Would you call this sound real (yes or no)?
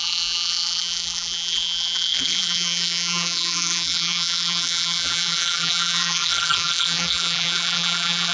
no